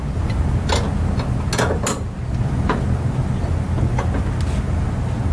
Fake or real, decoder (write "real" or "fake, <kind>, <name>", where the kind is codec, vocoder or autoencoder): real